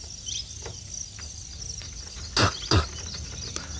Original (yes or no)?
yes